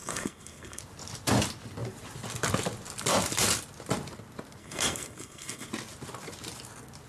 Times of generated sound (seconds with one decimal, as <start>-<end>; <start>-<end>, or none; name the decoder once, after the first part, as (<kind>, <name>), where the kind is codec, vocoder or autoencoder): 0.0-0.8 (codec, SNAC); 4.6-5.7